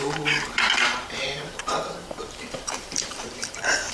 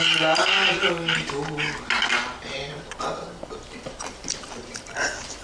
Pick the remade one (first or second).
first